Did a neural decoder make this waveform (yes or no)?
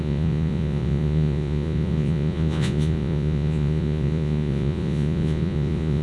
yes